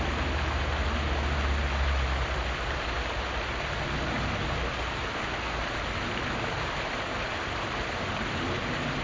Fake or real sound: real